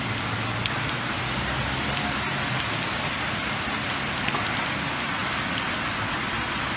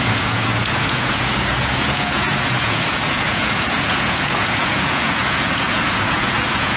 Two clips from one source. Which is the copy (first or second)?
second